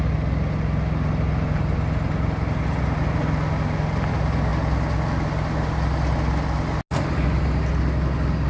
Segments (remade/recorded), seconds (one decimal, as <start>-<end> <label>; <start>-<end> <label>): 0.0-8.5 recorded